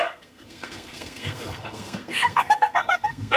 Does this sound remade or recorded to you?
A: remade